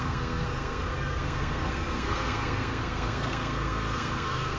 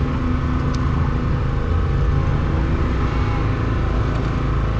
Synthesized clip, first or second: first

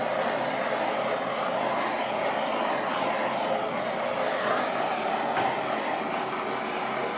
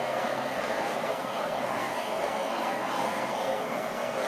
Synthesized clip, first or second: second